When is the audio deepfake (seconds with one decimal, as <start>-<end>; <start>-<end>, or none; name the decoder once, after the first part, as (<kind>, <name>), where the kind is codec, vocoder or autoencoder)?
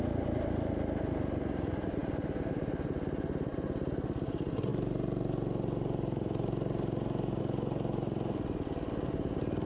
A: none